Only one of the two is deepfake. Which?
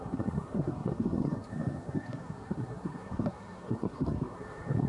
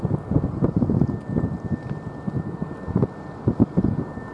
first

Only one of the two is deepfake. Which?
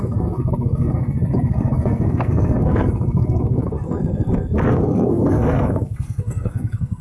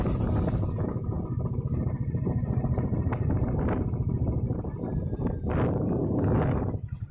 first